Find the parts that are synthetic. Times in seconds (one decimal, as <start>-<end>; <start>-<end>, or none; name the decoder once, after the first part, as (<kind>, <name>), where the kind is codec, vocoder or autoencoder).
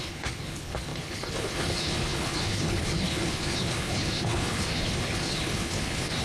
0.0-6.2 (codec, HILCodec)